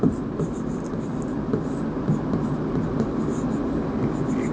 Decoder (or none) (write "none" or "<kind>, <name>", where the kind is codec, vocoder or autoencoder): none